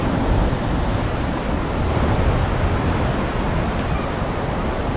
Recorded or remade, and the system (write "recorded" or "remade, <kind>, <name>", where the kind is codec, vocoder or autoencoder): recorded